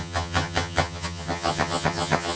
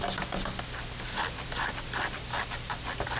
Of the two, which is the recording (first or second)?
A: second